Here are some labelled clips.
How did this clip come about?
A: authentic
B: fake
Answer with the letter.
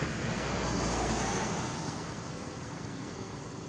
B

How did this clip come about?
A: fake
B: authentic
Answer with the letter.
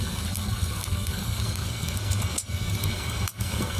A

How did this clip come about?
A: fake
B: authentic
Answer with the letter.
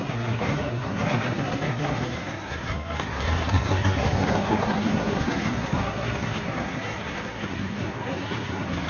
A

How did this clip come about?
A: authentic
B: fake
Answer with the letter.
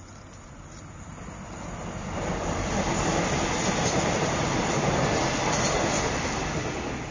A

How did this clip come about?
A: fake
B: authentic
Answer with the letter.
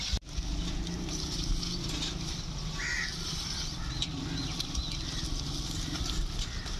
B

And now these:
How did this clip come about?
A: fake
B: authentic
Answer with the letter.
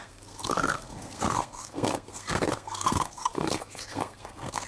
A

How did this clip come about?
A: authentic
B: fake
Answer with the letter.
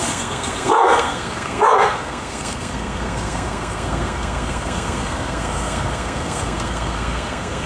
B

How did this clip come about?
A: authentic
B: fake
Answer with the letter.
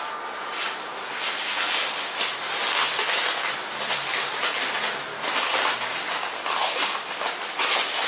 A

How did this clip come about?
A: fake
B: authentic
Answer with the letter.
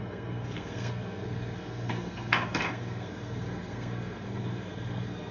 A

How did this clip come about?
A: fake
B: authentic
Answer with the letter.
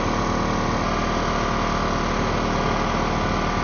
B